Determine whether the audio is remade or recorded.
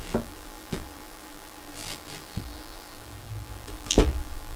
remade